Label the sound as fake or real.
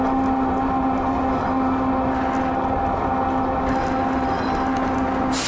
real